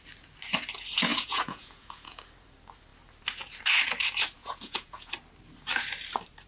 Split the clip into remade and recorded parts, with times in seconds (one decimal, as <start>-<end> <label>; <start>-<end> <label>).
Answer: 0.0-1.1 recorded; 1.1-2.2 remade; 2.2-4.4 recorded; 4.4-5.1 remade; 5.1-6.5 recorded